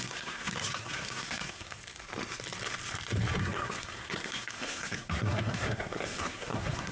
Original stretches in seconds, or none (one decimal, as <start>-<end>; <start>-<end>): 1.8-3.4